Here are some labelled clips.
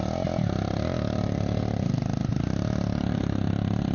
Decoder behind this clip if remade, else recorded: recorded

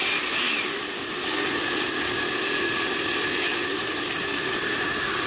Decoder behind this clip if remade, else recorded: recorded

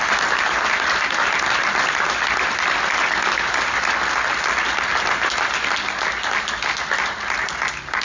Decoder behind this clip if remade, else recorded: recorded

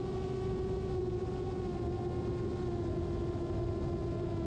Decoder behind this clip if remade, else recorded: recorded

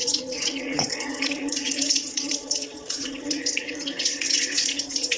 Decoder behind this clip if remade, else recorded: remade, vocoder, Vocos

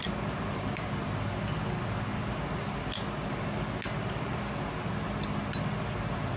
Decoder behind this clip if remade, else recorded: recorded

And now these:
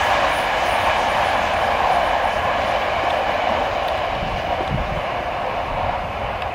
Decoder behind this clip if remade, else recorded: remade, vocoder, BigVGAN v2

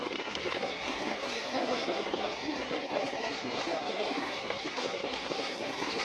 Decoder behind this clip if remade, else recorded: remade, codec, SNAC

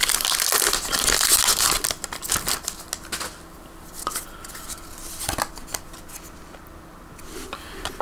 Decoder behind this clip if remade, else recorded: recorded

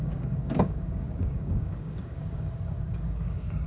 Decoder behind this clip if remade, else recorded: remade, codec, DAC